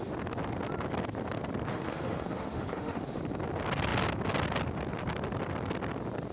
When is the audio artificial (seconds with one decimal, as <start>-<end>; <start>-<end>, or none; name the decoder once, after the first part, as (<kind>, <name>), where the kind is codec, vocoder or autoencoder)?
1.7-3.2 (autoencoder, DAC-VAE)